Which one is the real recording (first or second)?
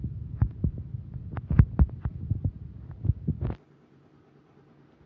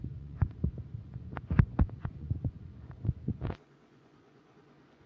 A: first